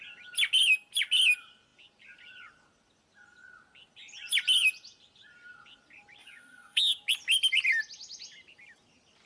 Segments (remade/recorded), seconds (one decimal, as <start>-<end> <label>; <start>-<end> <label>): 0.0-6.2 recorded; 6.2-6.8 remade; 6.8-9.3 recorded

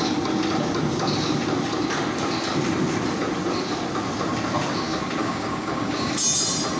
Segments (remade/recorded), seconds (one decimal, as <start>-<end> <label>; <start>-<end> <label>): 0.0-5.2 recorded; 5.2-6.1 remade; 6.1-6.8 recorded